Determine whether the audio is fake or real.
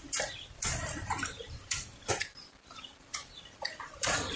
fake